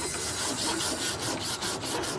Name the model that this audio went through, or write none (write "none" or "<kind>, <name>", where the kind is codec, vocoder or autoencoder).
none